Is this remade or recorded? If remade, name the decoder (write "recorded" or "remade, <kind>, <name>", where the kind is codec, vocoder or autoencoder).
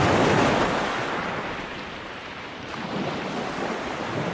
recorded